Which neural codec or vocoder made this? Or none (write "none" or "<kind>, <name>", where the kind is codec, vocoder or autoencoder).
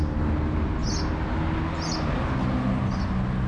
none